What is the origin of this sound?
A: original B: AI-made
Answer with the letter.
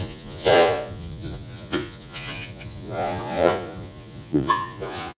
B